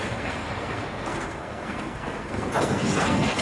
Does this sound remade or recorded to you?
remade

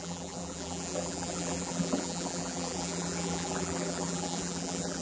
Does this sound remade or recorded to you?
remade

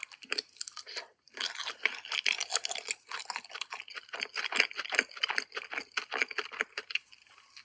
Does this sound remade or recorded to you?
recorded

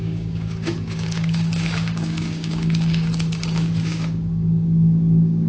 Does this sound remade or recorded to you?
remade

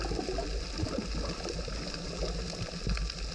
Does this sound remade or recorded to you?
recorded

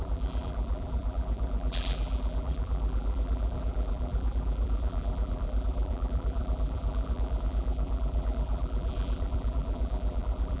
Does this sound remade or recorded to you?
remade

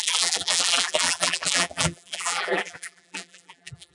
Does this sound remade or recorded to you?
remade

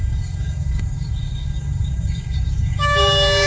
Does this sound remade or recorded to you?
remade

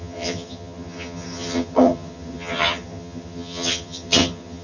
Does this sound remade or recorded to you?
remade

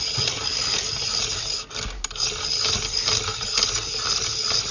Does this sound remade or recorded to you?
recorded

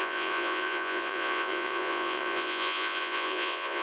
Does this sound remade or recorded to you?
remade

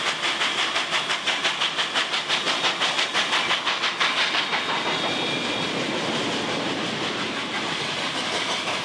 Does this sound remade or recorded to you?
recorded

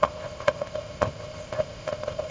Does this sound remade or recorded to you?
remade